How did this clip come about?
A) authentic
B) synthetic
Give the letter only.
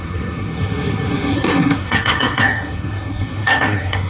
B